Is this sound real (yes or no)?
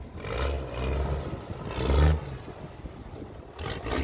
yes